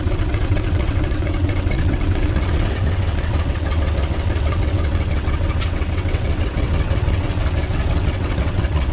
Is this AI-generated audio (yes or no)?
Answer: yes